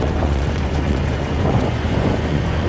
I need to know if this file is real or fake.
fake